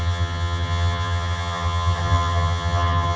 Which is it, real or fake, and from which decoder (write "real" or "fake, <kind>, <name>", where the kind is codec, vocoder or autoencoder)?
fake, vocoder, HiFi-GAN